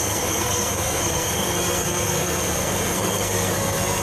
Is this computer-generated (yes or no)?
yes